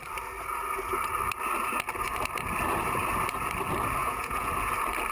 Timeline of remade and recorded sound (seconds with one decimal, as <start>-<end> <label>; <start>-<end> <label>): 0.0-4.0 recorded; 4.0-4.5 remade; 4.5-5.1 recorded